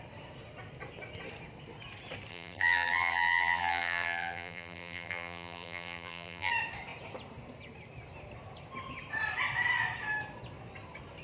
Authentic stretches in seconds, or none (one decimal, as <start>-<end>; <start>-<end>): 0.0-2.3; 6.5-11.2